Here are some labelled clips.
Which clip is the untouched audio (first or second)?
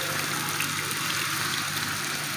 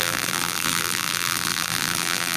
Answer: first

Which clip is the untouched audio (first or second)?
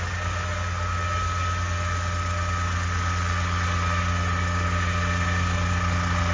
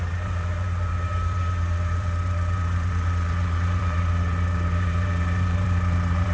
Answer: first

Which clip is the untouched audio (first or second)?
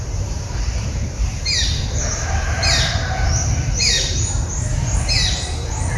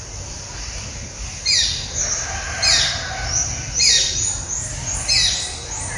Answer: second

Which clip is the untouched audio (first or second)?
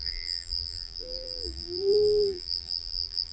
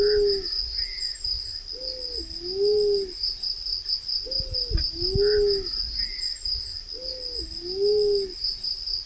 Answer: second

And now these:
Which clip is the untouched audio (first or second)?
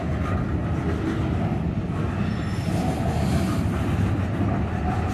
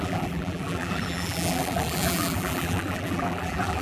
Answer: first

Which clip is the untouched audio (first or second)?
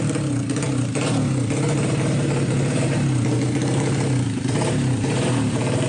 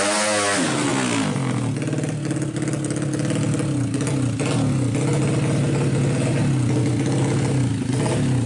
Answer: second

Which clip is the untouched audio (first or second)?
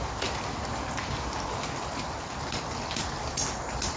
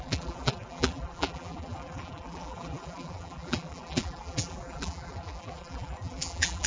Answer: first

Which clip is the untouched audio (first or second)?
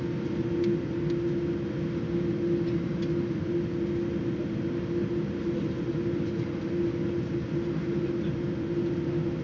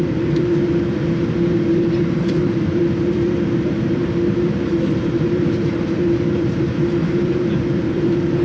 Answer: first